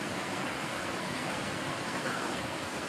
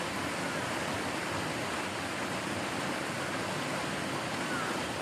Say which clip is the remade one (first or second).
first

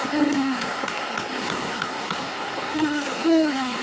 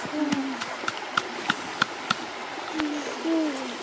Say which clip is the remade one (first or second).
first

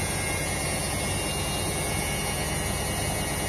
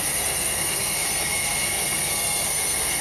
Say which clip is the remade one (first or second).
second